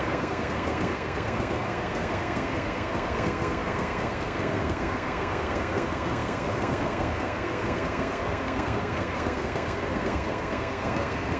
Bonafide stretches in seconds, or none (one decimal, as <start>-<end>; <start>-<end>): none